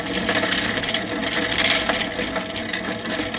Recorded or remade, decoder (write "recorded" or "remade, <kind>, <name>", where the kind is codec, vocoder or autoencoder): recorded